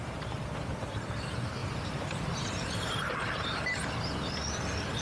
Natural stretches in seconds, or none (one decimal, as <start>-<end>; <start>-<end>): 3.8-5.0